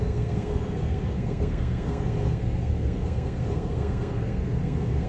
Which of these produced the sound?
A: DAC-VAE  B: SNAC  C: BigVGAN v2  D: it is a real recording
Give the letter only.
B